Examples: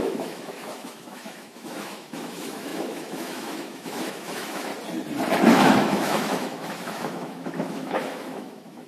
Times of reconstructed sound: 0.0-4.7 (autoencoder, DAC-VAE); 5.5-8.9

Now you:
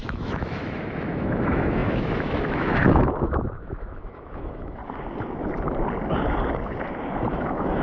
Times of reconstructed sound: 0.0-4.8 (autoencoder, DAC-VAE); 7.3-7.8